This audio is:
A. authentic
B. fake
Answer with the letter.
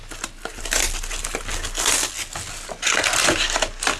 A